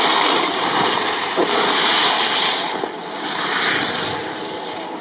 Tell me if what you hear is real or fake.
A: real